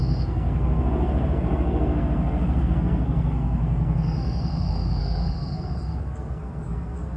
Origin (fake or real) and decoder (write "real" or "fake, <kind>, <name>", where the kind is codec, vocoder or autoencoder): fake, codec, SNAC